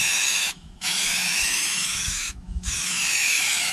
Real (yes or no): no